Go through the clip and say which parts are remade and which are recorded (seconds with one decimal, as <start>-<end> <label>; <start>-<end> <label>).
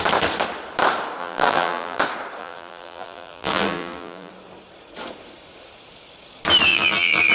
0.0-1.2 recorded; 1.2-2.0 remade; 2.0-2.4 recorded; 2.4-4.3 remade; 4.3-6.7 recorded; 6.7-7.3 remade